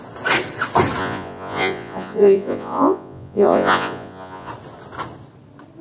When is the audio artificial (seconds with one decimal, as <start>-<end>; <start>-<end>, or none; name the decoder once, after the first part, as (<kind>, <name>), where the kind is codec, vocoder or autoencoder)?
1.0-4.5 (vocoder, Vocos)